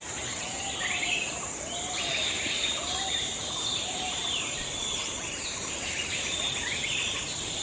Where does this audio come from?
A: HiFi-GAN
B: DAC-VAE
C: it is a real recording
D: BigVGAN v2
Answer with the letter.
D